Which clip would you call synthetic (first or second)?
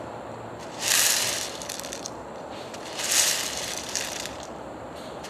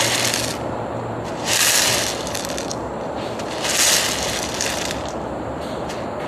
first